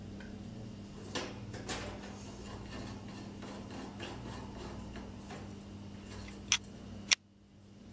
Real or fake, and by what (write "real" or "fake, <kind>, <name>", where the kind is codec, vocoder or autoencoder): real